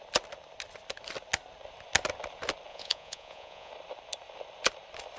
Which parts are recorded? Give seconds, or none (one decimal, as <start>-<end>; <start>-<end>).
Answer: 0.0-2.7; 3.7-5.2